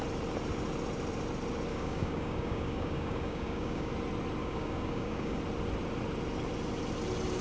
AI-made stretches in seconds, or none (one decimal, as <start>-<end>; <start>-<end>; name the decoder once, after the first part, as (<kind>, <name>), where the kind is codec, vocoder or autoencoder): 1.7-3.9 (codec, DAC); 4.4-5.4

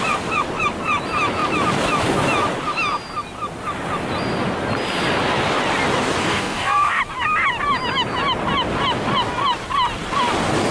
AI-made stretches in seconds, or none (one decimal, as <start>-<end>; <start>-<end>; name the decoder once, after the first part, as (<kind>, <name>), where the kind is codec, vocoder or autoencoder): 6.2-7.0 (codec, DAC)

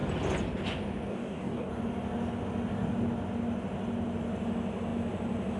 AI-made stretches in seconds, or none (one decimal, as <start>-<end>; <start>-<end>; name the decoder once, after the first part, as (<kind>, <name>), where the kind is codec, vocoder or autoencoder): 1.1-1.7 (codec, DAC)

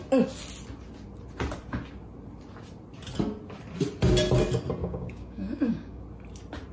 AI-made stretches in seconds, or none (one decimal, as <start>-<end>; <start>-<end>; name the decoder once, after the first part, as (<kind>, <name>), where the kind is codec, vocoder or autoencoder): 4.8-6.0 (codec, DAC)

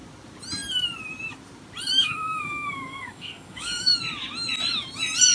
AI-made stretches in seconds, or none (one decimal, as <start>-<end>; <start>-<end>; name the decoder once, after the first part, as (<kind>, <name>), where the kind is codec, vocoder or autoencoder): 2.0-3.9 (codec, DAC)

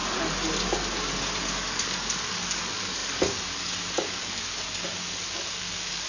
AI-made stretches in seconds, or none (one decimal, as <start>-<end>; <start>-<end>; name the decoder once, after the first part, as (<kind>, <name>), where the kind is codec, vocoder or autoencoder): 1.4-6.1 (codec, DAC)